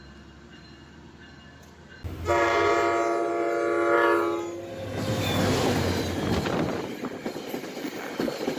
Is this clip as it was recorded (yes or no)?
yes